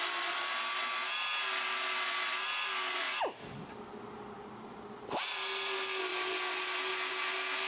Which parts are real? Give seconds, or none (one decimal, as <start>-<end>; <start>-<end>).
0.0-7.7